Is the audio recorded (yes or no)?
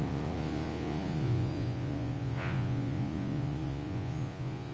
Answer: no